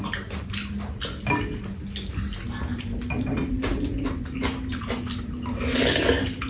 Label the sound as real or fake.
real